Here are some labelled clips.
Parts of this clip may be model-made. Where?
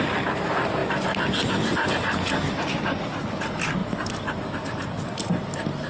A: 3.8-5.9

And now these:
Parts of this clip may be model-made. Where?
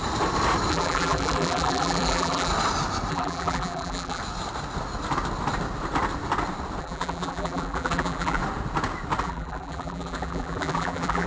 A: 0.7-2.5; 3.1-4.2; 6.8-8.4; 9.2-11.3